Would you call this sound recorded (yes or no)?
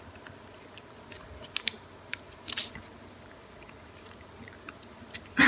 yes